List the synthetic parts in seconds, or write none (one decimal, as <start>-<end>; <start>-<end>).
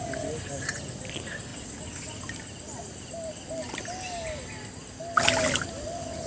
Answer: none